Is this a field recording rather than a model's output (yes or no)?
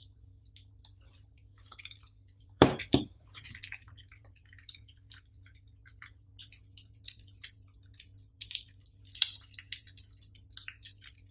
no